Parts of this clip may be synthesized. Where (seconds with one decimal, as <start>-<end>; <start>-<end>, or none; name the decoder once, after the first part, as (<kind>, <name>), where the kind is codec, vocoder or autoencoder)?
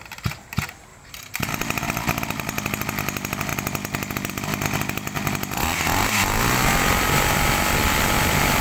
0.9-1.5 (vocoder, BigVGAN v2)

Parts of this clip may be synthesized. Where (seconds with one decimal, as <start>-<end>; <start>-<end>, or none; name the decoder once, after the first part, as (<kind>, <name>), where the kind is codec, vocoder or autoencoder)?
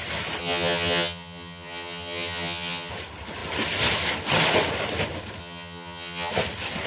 0.4-2.9 (vocoder, HiFi-GAN); 5.4-6.3